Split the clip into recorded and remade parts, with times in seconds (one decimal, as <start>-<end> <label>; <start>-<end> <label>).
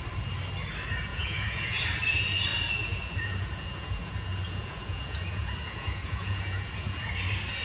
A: 0.0-1.1 recorded; 1.1-1.8 remade; 1.8-2.5 recorded; 2.5-7.1 remade; 7.1-7.6 recorded